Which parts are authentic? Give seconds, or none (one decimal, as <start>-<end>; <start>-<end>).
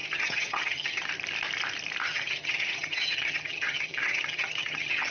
1.1-2.0